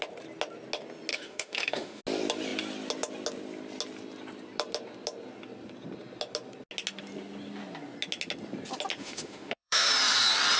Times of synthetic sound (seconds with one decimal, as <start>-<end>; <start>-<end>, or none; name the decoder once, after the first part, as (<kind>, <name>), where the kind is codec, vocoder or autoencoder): 1.1-2.0 (autoencoder, DAC-VAE); 9.0-9.9